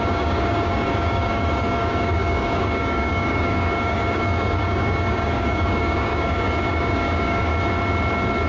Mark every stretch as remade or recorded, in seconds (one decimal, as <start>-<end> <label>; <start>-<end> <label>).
0.0-7.5 remade; 7.5-8.5 recorded